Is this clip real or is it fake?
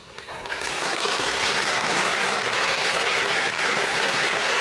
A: fake